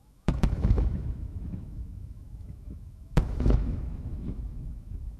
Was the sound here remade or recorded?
remade